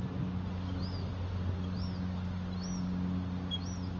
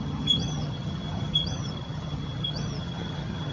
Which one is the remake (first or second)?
second